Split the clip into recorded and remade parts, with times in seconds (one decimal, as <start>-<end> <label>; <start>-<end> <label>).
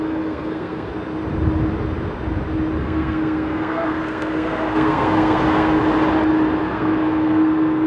0.0-0.9 remade; 0.9-2.8 recorded; 2.8-5.8 remade; 5.8-6.6 recorded; 6.6-7.9 remade